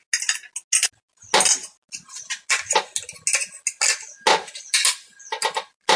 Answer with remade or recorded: recorded